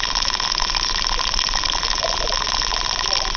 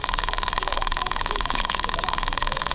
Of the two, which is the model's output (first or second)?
second